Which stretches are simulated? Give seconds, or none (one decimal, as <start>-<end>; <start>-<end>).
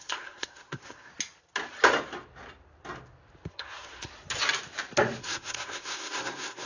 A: 0.0-1.1; 3.5-4.1; 5.2-6.7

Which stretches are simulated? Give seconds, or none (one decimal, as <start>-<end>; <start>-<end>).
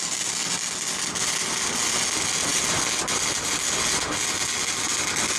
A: none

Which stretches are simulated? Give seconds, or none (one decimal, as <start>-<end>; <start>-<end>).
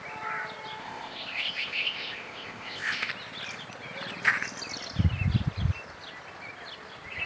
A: 0.8-3.1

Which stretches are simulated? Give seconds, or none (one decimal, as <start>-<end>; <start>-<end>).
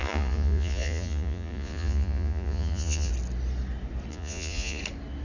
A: 0.0-3.1; 4.1-4.8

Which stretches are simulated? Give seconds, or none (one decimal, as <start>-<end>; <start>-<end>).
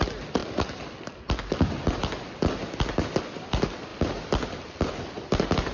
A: none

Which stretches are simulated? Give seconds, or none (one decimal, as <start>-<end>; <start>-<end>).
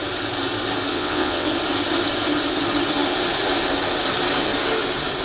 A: 0.9-1.5